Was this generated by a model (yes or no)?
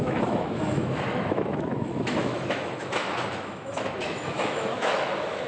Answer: yes